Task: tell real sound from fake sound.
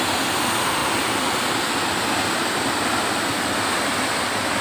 real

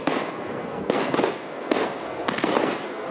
fake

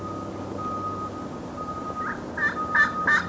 real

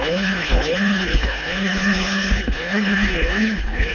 fake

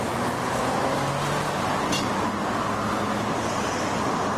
real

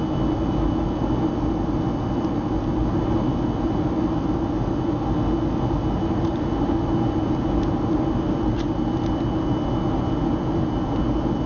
real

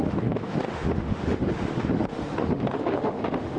fake